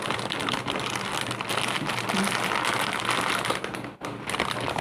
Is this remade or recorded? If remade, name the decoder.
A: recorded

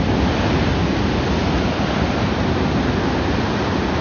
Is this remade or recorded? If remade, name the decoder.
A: recorded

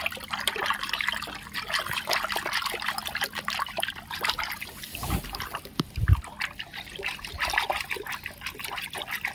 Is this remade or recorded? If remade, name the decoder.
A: recorded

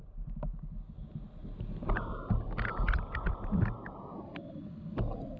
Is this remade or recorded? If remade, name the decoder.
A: recorded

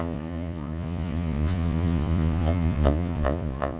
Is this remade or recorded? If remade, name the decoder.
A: remade, vocoder, Vocos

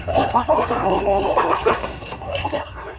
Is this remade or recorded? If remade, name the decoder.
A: remade, codec, SNAC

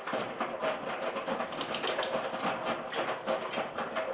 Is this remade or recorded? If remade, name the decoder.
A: recorded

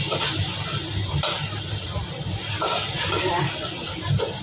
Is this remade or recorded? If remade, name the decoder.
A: recorded